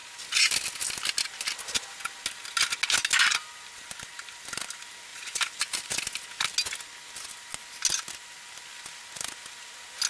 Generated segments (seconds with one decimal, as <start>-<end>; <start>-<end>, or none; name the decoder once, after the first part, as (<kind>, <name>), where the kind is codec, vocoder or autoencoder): 5.1-5.9 (vocoder, BigVGAN v2)